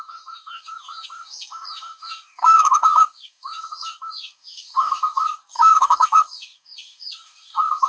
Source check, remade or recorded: remade